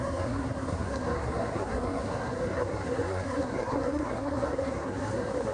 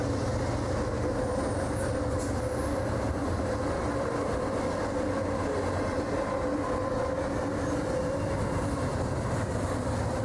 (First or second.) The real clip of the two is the second